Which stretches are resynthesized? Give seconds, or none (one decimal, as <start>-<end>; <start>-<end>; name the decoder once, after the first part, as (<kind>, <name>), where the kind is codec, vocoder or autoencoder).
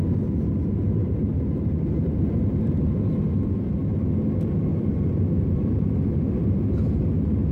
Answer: 1.0-2.7 (vocoder, BigVGAN v2); 4.7-5.7